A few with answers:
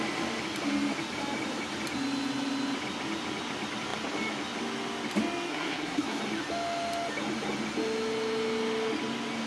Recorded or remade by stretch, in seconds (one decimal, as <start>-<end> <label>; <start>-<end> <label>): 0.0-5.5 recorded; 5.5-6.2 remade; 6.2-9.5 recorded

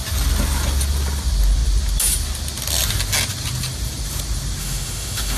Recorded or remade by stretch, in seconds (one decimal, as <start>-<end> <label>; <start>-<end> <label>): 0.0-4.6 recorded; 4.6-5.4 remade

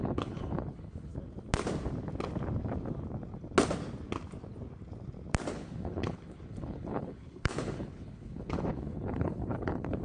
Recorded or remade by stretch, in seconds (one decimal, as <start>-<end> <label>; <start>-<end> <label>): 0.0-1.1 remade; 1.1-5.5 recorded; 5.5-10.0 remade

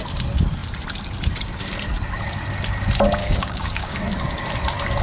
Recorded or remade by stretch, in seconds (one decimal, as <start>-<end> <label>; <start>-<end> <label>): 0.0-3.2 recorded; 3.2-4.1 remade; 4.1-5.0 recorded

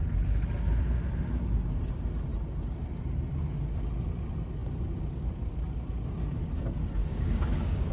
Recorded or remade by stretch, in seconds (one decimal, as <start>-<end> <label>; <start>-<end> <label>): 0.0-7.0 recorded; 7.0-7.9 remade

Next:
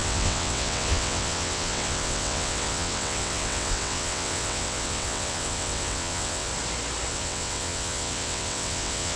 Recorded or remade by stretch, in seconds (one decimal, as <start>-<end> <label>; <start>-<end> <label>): 0.0-6.5 remade; 6.5-7.1 recorded; 7.1-9.2 remade

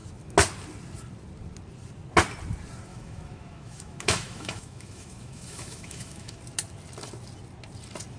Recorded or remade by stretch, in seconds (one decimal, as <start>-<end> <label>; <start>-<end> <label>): 0.0-2.9 recorded; 2.9-6.4 remade; 6.4-8.2 recorded